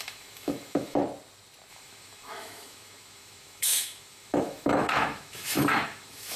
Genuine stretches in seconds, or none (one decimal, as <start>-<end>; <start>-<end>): 1.0-1.7